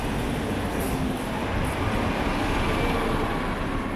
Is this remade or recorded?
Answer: recorded